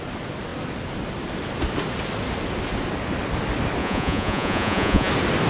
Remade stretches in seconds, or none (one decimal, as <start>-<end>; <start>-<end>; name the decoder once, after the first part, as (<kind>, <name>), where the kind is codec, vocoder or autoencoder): 3.8-5.1 (vocoder, Vocos)